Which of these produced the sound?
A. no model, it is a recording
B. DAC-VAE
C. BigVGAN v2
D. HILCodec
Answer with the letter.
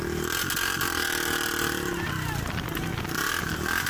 A